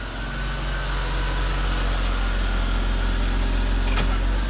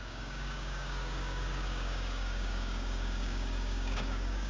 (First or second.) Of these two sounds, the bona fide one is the first